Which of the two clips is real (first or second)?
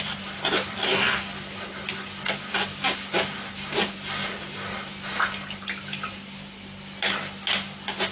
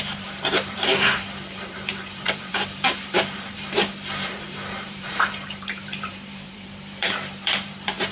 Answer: first